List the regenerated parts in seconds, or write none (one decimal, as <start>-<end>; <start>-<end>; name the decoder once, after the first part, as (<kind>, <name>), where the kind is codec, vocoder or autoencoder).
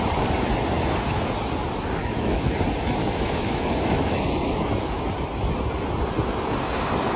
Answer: 2.0-2.6 (autoencoder, DAC-VAE); 3.0-5.0